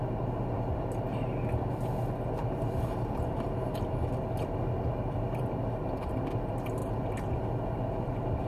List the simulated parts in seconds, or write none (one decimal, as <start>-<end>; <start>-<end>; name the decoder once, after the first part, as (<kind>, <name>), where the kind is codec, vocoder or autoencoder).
none